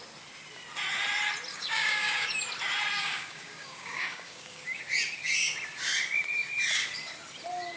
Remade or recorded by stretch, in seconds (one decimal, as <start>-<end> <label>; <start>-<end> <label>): 0.0-1.5 recorded; 1.5-2.3 remade; 2.3-3.0 recorded; 3.0-4.8 remade; 4.8-7.8 recorded